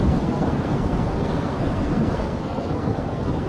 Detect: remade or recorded remade